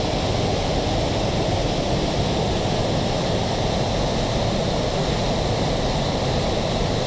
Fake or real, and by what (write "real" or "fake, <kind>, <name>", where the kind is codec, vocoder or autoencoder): real